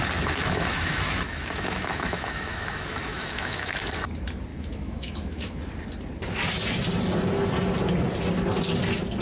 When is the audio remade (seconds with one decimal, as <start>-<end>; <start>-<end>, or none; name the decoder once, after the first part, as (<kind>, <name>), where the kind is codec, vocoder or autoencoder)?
0.4-3.9 (autoencoder, DAC-VAE); 4.5-5.6